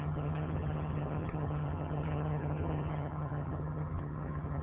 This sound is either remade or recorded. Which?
remade